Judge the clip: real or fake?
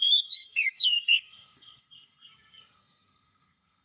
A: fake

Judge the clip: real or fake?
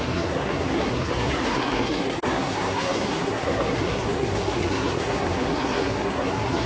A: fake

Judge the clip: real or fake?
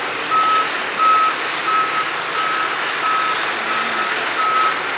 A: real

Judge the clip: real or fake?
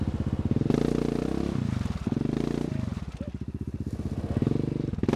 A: real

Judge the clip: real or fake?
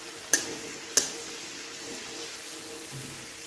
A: real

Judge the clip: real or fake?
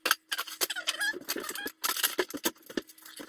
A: real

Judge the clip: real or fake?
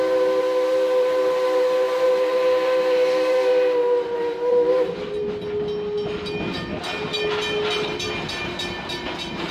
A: real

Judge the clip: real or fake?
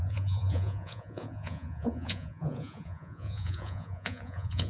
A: fake